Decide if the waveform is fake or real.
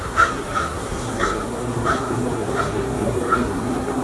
fake